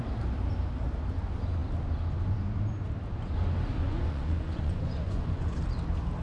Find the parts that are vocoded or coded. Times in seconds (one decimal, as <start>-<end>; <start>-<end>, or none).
3.8-5.6